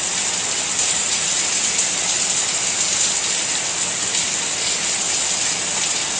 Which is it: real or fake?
real